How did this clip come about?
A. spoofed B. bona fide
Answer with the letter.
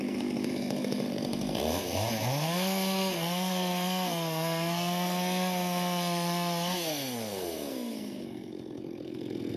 A